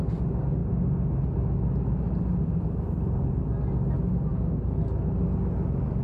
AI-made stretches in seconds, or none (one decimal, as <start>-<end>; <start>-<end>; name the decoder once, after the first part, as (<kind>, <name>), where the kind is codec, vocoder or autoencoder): none

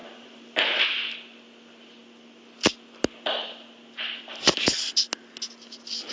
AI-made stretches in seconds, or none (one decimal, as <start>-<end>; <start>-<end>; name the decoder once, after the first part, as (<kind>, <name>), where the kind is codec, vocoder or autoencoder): 0.0-0.8 (vocoder, BigVGAN v2)

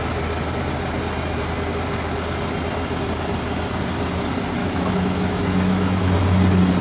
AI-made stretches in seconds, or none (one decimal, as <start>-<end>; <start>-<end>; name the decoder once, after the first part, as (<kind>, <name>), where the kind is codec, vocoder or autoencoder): 4.6-6.0 (autoencoder, DAC-VAE)

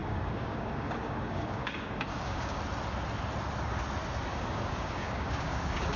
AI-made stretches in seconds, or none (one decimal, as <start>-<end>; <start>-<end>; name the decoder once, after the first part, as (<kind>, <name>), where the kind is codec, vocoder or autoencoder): 0.0-2.6 (codec, DAC); 4.3-6.0